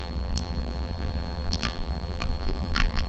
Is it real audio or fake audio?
fake